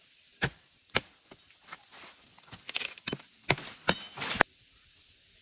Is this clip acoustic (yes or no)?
yes